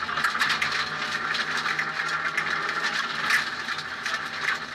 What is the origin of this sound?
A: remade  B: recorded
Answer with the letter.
B